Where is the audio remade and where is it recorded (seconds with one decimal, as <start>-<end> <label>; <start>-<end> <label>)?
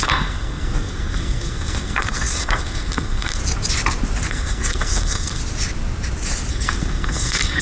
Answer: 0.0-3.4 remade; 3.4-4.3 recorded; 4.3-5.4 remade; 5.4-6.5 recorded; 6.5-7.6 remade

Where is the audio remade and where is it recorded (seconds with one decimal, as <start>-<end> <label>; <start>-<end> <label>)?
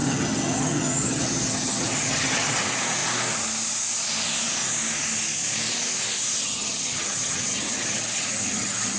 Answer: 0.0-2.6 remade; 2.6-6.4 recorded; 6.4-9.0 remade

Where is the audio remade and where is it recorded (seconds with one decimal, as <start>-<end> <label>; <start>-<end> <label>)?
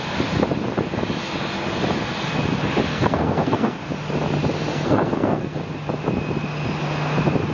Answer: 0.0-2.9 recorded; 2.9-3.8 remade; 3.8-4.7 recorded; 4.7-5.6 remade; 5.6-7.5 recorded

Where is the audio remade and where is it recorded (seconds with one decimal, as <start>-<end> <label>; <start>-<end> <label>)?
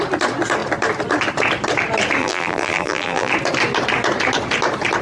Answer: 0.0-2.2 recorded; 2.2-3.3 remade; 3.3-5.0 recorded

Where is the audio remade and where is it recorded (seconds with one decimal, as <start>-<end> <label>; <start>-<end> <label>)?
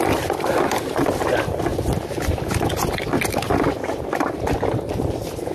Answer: 0.0-5.5 recorded